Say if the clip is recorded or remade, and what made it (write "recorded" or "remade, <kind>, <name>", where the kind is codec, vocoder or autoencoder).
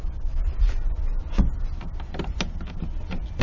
recorded